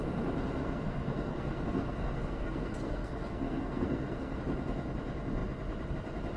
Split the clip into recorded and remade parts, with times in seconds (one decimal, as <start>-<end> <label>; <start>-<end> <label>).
0.0-0.6 recorded; 0.6-4.4 remade; 4.4-6.4 recorded